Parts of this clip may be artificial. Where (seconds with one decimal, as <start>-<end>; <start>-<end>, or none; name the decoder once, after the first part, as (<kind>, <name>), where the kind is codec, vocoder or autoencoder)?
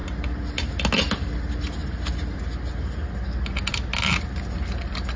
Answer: none